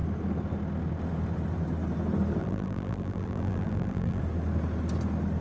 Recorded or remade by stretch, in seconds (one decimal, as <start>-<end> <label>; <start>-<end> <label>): 0.0-2.4 recorded; 2.4-4.2 remade; 4.2-5.4 recorded